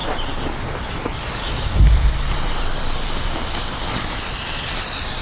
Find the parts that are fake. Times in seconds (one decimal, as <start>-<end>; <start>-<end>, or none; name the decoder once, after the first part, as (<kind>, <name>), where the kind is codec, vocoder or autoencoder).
0.9-5.2 (vocoder, BigVGAN v2)